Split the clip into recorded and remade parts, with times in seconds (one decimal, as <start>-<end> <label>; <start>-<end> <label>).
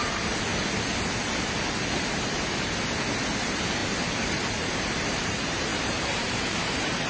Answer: 0.0-0.5 remade; 0.5-3.4 recorded; 3.4-3.8 remade; 3.8-4.5 recorded; 4.5-7.1 remade